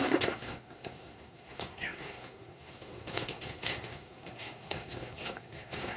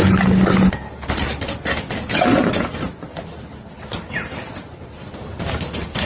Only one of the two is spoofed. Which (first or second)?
first